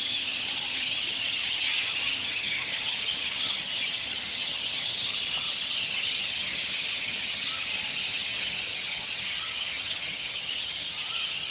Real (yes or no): no